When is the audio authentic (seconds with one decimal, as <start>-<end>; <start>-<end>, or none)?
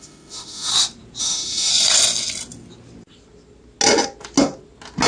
0.7-1.2; 1.7-5.1